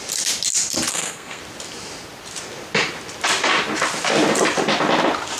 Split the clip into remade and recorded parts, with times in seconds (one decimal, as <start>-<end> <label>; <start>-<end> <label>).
0.0-0.9 recorded; 0.9-1.4 remade; 1.4-5.4 recorded